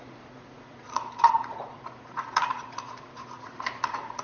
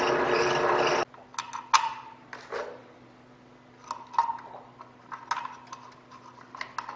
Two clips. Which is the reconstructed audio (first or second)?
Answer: first